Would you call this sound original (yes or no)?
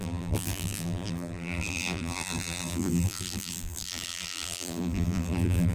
no